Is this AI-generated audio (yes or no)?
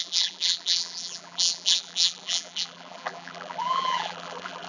yes